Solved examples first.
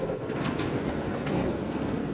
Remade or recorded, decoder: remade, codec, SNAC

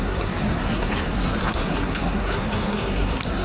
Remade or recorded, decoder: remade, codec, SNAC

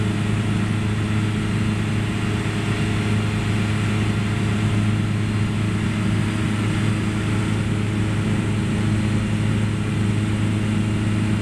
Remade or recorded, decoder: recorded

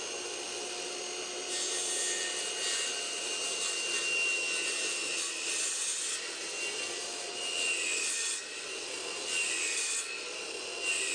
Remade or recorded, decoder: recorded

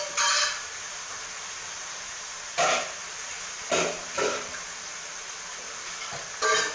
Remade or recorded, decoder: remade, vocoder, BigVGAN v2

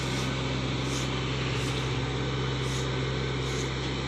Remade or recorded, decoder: recorded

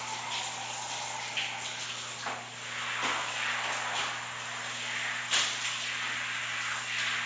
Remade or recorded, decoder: recorded